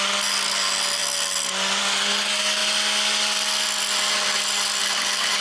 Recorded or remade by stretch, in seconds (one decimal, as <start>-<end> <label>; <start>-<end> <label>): 0.0-5.4 recorded